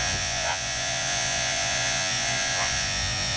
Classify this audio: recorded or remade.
remade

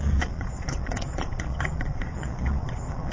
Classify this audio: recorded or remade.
remade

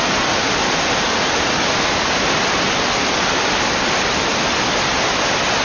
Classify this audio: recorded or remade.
recorded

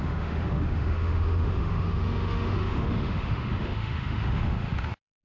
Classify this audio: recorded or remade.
remade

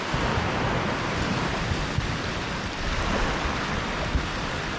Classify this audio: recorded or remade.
recorded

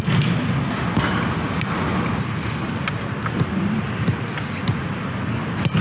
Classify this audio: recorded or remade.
recorded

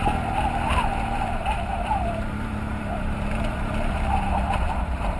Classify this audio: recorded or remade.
remade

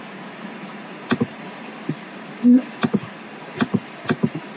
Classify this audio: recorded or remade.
recorded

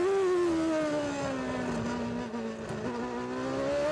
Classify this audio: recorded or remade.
recorded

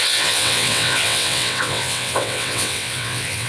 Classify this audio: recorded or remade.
remade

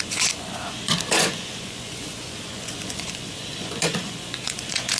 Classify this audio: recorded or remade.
remade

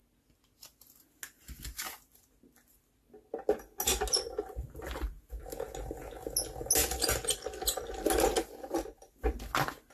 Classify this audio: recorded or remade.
recorded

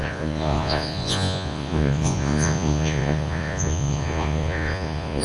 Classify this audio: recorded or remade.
remade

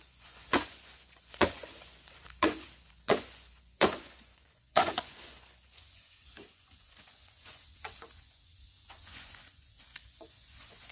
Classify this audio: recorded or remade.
remade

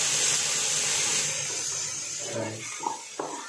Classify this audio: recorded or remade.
recorded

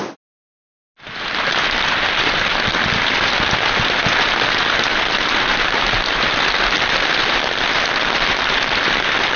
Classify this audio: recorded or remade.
recorded